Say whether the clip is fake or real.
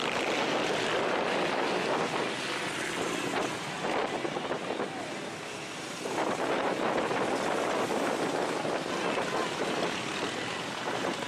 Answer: real